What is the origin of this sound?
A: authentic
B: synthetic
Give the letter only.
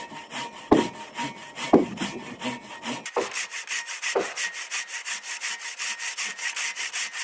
A